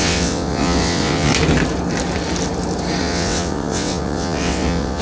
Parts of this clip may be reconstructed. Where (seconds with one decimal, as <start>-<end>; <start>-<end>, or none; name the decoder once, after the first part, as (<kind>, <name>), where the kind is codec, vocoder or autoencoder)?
0.0-1.3 (vocoder, WaveNeXt); 3.0-5.0